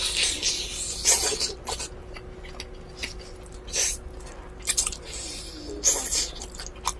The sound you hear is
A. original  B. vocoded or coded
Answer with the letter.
A